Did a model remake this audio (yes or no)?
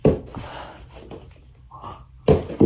no